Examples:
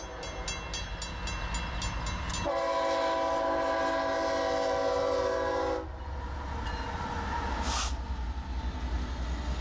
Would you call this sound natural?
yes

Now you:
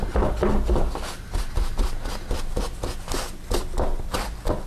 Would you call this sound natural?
yes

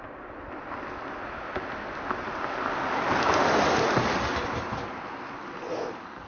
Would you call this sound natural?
yes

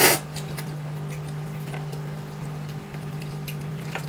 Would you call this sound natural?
yes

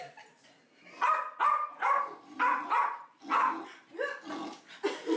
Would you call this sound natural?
yes